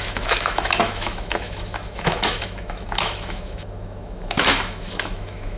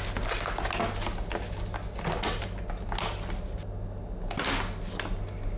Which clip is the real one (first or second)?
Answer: second